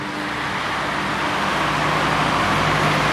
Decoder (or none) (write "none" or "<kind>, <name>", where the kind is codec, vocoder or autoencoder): none